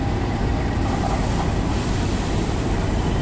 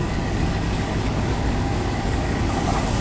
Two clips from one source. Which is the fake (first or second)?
second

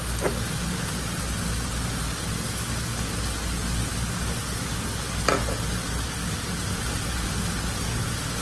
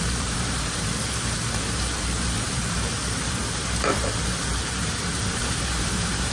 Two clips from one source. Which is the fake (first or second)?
second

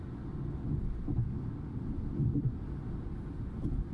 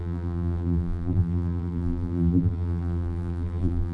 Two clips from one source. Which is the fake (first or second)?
second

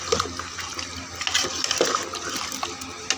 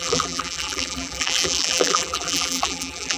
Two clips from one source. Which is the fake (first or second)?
second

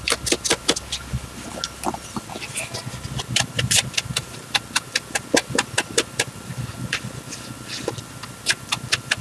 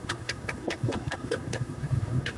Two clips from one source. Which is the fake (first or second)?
second